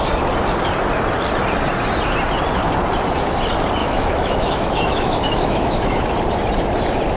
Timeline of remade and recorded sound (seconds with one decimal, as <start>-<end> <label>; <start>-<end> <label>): 0.0-3.8 recorded; 3.8-6.1 remade; 6.1-7.2 recorded